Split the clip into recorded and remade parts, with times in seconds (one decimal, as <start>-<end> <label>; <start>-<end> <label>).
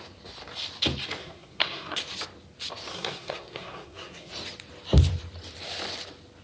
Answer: 0.0-1.2 recorded; 1.2-2.0 remade; 2.0-2.9 recorded; 2.9-4.3 remade; 4.3-6.4 recorded